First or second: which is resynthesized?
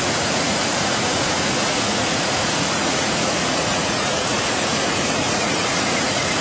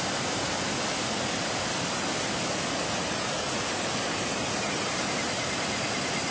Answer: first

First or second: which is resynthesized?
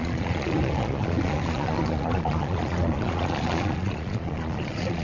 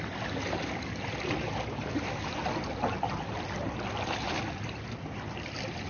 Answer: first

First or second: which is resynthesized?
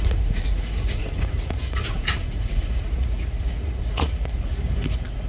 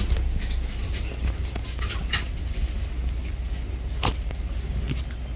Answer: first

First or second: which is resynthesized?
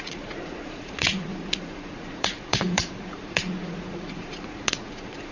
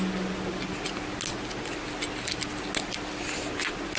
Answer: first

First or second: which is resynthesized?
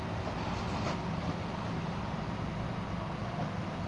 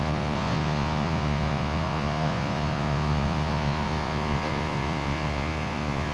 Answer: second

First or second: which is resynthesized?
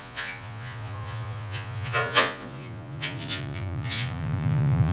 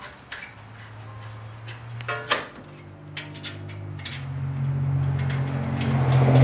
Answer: first